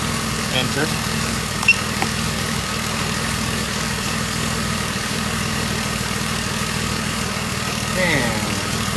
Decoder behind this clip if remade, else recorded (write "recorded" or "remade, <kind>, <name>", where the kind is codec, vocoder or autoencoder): remade, codec, DAC